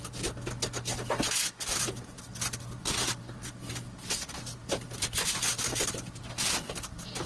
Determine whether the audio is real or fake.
real